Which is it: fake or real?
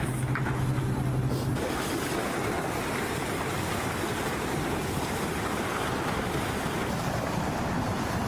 real